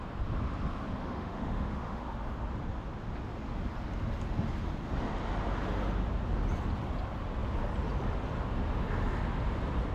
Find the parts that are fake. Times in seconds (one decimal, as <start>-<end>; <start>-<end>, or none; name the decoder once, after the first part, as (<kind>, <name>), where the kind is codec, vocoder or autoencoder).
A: 1.0-2.0 (autoencoder, DAC-VAE)